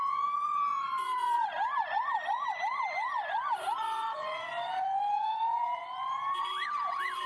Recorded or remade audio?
remade